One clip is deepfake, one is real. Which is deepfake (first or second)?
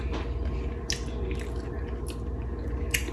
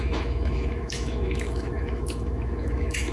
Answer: second